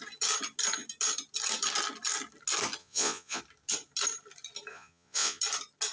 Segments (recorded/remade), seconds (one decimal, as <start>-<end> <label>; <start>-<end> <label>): 0.0-2.8 recorded; 2.8-3.4 remade; 3.4-4.7 recorded; 4.7-5.4 remade; 5.4-5.9 recorded